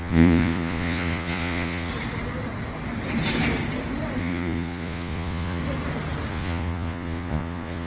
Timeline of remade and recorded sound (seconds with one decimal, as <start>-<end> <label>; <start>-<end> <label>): 0.0-1.9 remade; 1.9-4.2 recorded; 4.2-5.6 remade; 5.6-6.3 recorded; 6.3-7.9 remade